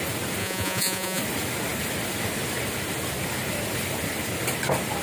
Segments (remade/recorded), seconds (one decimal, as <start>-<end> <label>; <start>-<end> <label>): 0.0-0.4 recorded; 0.4-1.2 remade; 1.2-5.0 recorded